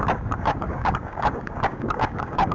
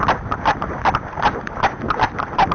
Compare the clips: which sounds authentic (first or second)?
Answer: second